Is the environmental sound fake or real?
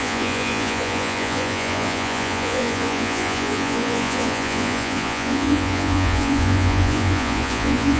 fake